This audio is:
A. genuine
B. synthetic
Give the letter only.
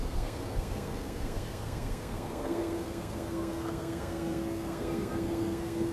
B